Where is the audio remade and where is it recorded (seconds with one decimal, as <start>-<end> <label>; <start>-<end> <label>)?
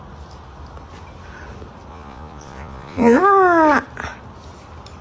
0.0-1.9 recorded; 1.9-3.2 remade; 3.2-5.0 recorded